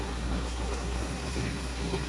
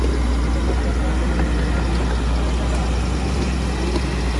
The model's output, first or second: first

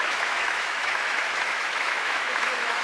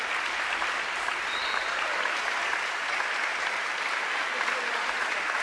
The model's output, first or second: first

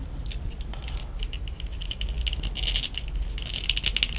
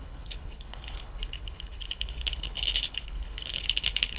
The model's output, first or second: second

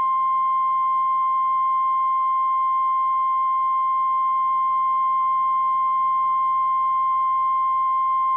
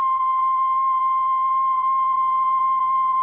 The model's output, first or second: second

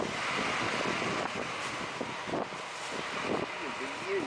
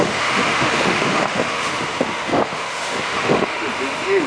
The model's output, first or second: second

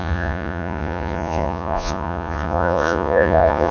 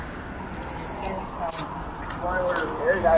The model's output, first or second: first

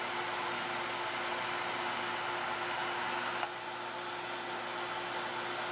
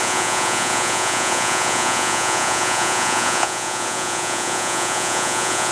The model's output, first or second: second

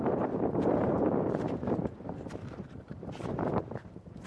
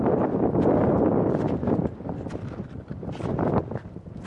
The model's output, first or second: first